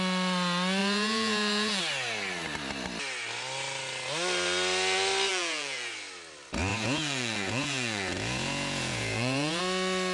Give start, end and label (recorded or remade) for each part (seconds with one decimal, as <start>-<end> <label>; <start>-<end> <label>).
0.0-0.8 recorded; 0.8-1.8 remade; 1.8-5.3 recorded; 5.3-5.9 remade; 5.9-6.7 recorded; 6.7-9.6 remade; 9.6-10.1 recorded